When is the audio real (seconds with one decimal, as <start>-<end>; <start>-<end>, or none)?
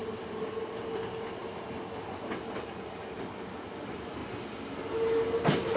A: 0.0-5.8